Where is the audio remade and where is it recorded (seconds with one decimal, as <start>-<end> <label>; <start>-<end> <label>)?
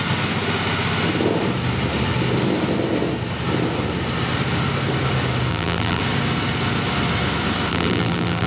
0.0-5.5 recorded; 5.5-6.0 remade; 6.0-7.7 recorded; 7.7-8.5 remade